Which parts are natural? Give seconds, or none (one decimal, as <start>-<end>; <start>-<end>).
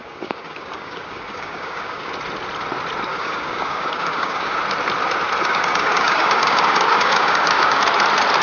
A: 2.1-3.1; 4.6-5.4; 7.8-8.4